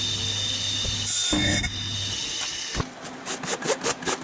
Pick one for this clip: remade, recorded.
recorded